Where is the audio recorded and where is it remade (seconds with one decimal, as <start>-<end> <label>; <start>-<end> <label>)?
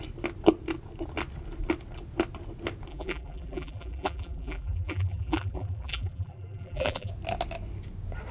0.0-2.9 recorded; 2.9-7.1 remade; 7.1-8.3 recorded